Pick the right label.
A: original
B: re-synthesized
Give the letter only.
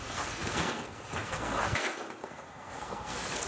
B